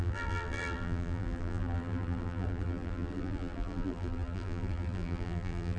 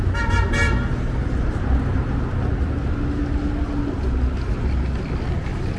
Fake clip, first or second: first